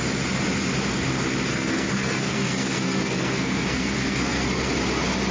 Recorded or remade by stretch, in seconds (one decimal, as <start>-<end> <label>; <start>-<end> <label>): 0.0-1.5 recorded; 1.5-4.7 remade; 4.7-5.3 recorded